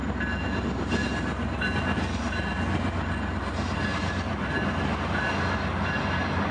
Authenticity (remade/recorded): recorded